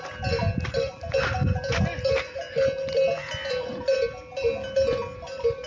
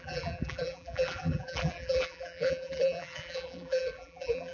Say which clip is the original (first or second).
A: first